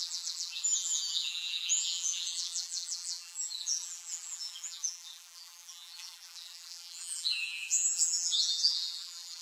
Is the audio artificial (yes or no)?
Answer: yes